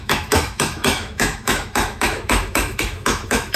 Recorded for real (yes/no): no